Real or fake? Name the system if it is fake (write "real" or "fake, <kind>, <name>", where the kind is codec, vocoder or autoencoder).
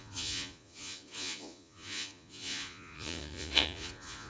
fake, vocoder, Vocos